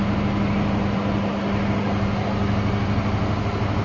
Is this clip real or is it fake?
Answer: real